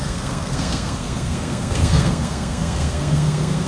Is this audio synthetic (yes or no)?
yes